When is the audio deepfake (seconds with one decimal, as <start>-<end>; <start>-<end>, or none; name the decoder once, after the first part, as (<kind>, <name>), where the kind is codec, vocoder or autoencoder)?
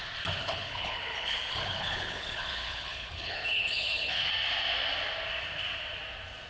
0.4-4.3 (codec, HILCodec)